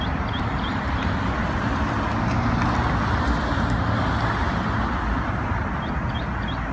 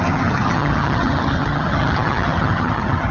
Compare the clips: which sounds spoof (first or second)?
second